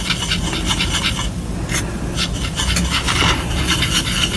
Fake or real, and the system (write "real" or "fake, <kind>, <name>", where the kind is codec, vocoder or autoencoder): real